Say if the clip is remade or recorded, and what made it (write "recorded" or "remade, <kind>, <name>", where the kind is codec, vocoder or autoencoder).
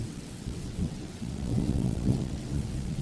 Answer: remade, vocoder, WaveNeXt